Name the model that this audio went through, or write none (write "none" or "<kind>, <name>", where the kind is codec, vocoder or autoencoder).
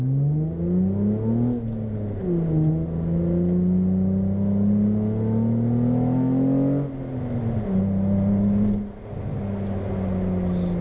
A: none